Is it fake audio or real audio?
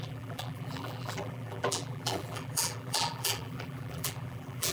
fake